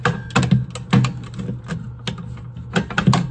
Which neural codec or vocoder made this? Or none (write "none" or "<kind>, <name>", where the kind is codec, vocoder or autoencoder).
none